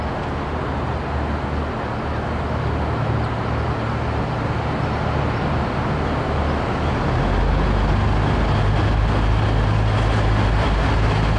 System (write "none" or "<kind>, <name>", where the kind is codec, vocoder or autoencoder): none